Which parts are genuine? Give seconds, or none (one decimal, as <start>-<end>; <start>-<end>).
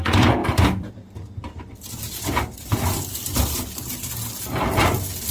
0.0-0.4; 3.6-5.3